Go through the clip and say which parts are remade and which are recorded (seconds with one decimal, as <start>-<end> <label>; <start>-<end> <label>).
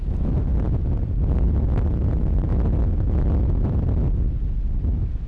0.0-2.5 remade; 2.5-5.3 recorded